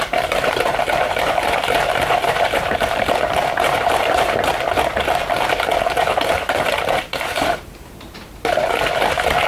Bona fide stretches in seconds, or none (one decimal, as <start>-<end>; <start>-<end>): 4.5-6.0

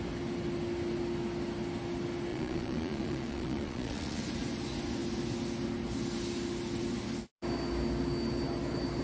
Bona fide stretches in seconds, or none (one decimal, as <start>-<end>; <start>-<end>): 0.0-2.3; 4.2-9.0

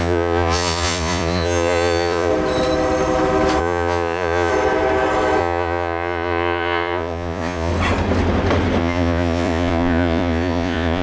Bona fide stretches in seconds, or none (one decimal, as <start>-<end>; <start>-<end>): 2.3-3.6; 4.5-5.4; 7.7-8.8

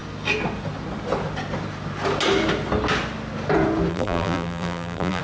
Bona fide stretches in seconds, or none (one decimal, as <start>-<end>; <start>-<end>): 0.0-3.9

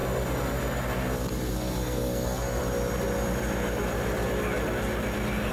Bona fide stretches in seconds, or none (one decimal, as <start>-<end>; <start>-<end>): 0.0-1.5; 2.6-5.5

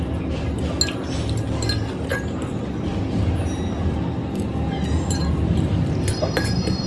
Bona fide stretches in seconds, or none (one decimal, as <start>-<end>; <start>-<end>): 0.0-6.9